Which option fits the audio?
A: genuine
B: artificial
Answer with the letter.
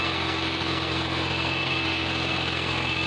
B